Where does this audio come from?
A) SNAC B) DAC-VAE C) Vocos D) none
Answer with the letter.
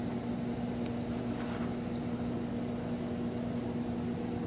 D